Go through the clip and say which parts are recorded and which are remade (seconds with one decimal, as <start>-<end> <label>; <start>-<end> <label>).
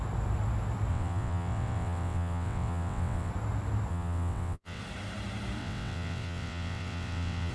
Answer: 0.0-0.9 recorded; 0.9-3.3 remade; 3.3-3.9 recorded; 3.9-4.8 remade; 4.8-5.6 recorded; 5.6-7.5 remade